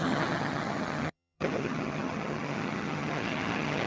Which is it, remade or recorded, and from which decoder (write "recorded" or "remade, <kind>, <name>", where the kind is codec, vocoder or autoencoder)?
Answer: remade, vocoder, HiFi-GAN